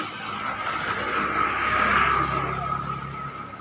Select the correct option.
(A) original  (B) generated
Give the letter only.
A